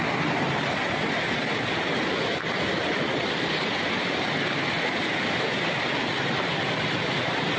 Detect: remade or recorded recorded